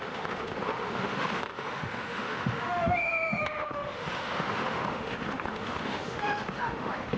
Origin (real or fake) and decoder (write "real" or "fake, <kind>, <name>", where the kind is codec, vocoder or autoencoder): fake, autoencoder, DAC-VAE